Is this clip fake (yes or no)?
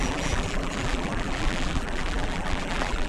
yes